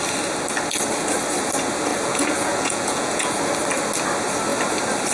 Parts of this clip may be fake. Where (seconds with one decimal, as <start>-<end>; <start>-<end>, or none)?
1.9-3.4